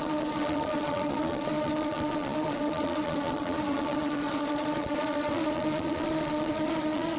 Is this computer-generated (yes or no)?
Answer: yes